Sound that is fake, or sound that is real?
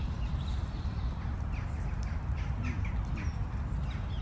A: real